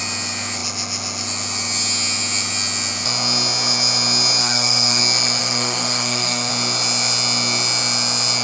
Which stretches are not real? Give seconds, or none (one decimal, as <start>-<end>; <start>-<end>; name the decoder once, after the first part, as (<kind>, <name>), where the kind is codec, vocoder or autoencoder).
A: 4.4-5.0 (codec, SNAC); 5.4-6.5